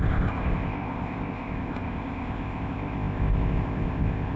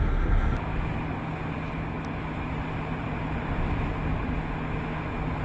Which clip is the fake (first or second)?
first